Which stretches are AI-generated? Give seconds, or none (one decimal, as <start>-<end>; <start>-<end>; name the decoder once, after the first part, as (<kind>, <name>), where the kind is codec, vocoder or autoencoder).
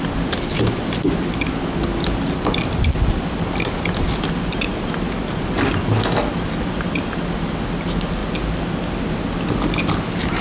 none